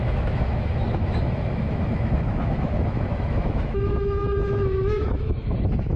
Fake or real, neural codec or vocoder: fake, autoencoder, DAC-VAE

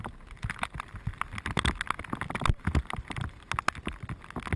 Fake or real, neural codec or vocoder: real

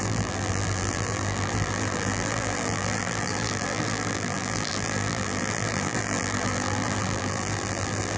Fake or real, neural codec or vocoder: fake, vocoder, BigVGAN v2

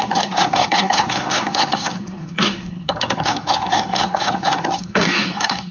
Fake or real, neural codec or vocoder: fake, codec, SNAC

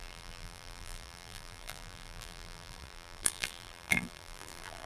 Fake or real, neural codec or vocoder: fake, vocoder, BigVGAN v2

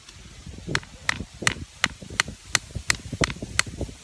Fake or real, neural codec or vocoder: real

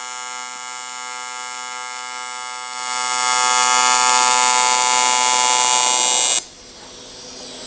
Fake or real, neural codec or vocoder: real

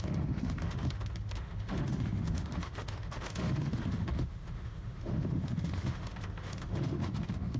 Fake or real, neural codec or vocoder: fake, autoencoder, DAC-VAE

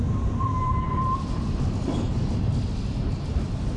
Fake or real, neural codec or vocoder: real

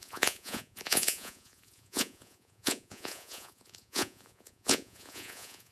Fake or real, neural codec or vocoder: fake, vocoder, Vocos